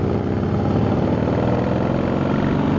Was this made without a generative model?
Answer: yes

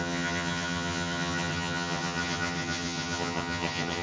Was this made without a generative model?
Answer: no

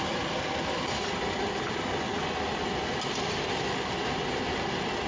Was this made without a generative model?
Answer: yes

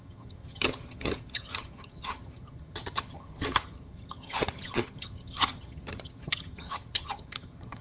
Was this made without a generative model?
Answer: no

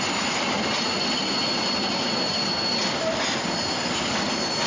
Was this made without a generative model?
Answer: yes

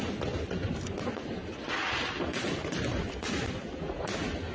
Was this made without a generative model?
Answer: yes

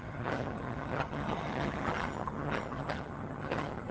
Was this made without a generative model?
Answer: no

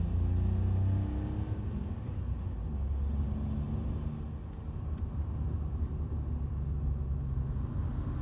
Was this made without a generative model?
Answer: yes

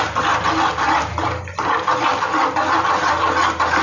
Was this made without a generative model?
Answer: yes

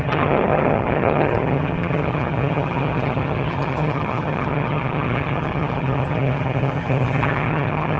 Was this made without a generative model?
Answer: no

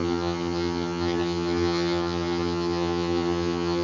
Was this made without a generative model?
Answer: no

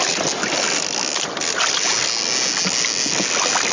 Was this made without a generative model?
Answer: yes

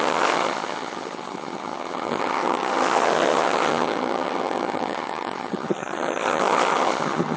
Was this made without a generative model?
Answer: no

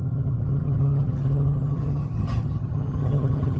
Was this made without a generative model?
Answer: no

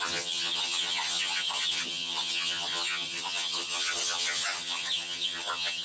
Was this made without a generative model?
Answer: no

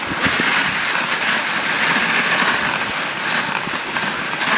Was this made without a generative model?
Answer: yes